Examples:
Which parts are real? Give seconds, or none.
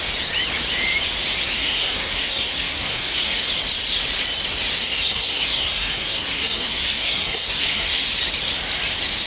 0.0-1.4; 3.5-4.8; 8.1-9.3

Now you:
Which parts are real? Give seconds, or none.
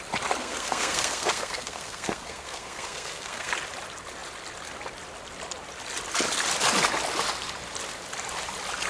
0.0-0.4; 3.5-8.9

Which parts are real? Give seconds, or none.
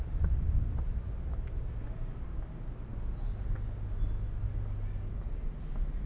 0.0-6.1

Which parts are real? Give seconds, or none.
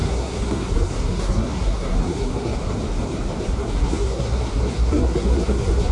2.6-3.7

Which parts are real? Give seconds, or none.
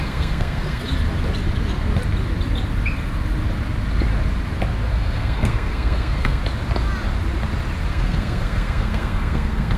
0.8-4.9; 6.4-7.9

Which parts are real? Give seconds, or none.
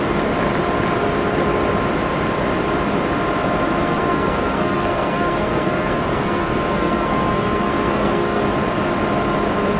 0.0-3.8; 8.4-9.8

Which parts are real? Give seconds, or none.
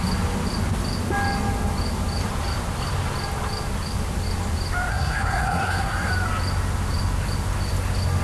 0.0-4.9; 6.1-8.2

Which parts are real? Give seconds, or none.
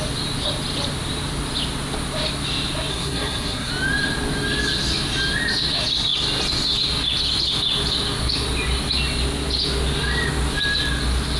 0.0-2.9; 3.7-11.4